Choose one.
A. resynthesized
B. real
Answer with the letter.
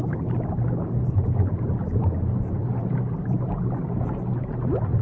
B